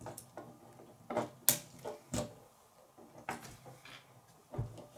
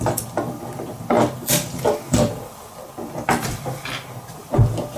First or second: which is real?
first